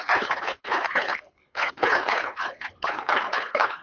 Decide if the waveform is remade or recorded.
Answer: remade